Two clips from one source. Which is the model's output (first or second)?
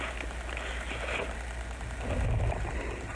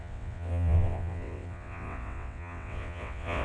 second